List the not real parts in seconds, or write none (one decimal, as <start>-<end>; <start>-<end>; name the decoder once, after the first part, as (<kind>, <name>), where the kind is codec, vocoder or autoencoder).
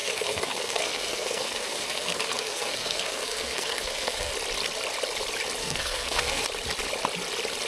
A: 0.0-4.3 (codec, SNAC); 5.6-6.4